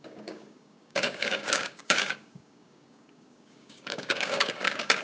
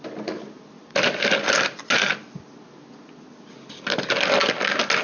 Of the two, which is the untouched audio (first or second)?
second